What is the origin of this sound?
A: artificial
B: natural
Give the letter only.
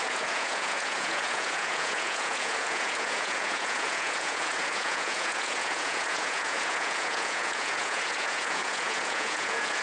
A